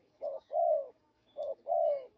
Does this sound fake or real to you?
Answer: fake